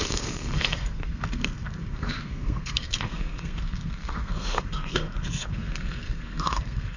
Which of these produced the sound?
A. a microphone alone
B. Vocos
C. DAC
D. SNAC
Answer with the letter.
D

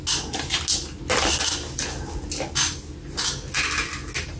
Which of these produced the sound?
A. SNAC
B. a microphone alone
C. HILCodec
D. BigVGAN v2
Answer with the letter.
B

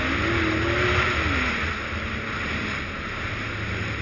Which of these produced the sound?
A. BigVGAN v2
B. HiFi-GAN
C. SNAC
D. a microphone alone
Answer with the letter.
D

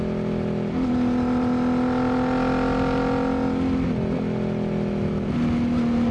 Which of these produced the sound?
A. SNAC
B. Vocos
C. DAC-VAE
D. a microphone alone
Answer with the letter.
D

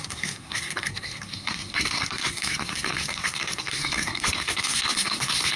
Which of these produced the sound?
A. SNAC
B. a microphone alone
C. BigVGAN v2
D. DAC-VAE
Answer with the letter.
A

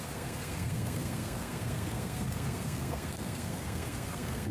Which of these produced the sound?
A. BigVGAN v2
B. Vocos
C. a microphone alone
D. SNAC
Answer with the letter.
D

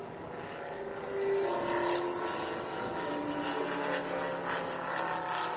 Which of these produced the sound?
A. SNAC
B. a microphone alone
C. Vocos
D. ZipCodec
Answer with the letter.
B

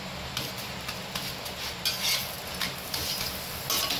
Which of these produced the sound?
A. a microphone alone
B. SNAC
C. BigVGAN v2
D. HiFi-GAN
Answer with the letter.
A